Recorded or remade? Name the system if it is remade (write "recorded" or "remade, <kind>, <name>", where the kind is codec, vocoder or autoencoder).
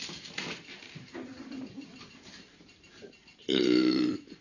remade, vocoder, BigVGAN v2